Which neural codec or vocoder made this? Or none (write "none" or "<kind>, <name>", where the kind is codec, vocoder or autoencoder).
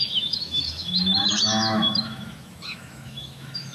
autoencoder, DAC-VAE